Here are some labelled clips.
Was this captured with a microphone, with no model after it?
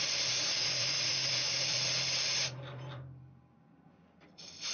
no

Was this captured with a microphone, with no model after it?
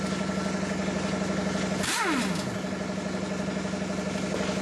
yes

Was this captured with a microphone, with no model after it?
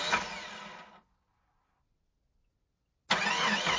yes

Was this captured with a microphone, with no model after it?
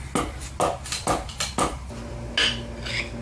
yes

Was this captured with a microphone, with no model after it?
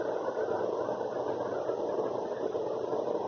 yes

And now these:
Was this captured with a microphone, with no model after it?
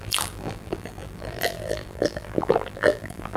no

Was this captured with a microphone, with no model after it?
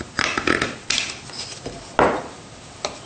yes